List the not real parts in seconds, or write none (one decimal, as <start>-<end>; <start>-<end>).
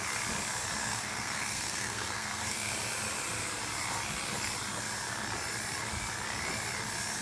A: 0.8-2.7